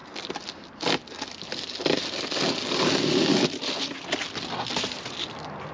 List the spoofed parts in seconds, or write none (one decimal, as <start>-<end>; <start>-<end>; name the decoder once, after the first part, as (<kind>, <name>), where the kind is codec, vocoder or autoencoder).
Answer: none

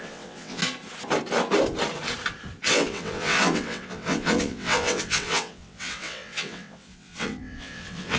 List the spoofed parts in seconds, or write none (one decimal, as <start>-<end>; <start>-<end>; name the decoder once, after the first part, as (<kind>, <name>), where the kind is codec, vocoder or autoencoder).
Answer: 0.0-0.6 (vocoder, WaveNeXt); 2.7-8.2

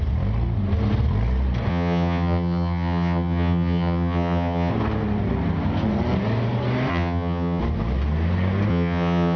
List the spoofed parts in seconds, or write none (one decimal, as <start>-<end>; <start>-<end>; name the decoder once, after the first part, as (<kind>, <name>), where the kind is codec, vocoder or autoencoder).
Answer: 1.7-4.7 (vocoder, HiFi-GAN); 6.9-7.6; 8.7-9.4

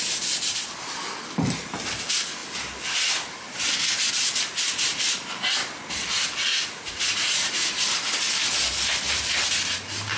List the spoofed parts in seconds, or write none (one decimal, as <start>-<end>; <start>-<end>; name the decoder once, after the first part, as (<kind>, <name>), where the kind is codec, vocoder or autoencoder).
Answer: 6.5-7.7 (vocoder, Vocos)

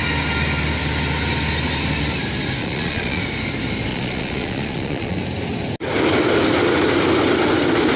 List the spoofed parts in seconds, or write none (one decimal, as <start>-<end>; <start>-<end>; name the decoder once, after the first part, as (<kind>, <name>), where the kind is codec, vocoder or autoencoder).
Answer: 2.6-3.2 (vocoder, Vocos); 3.9-5.2